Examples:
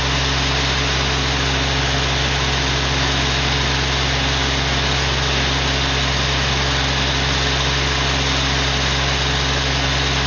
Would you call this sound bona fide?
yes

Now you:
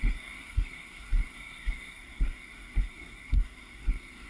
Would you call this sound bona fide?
no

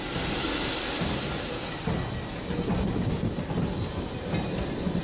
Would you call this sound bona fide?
yes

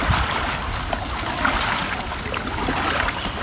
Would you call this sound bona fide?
yes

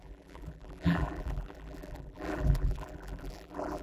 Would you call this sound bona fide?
no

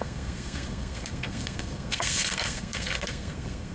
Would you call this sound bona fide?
no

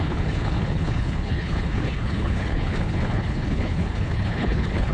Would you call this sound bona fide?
no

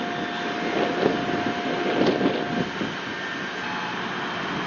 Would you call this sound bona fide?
yes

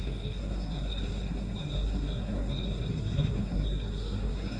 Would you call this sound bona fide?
no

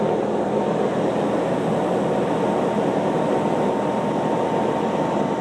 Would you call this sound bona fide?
no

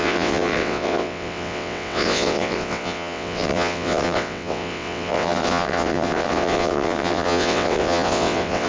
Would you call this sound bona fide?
no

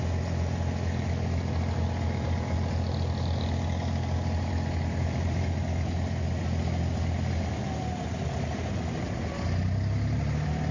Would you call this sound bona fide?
yes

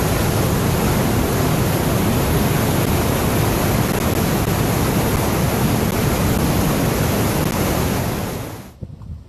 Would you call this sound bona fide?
yes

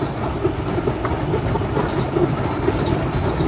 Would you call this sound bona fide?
yes